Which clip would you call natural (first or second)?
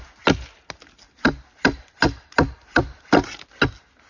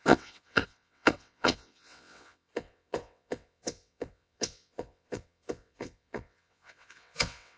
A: first